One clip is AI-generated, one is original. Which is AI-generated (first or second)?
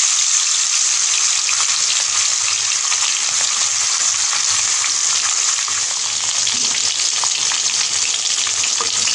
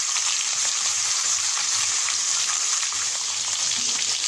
second